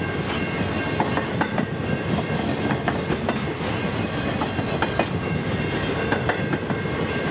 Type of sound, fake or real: real